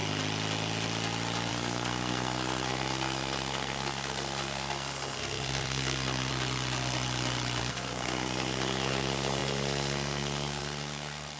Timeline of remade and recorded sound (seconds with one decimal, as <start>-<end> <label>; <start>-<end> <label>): 0.0-1.5 recorded; 1.5-6.3 remade; 6.3-7.6 recorded; 7.6-11.4 remade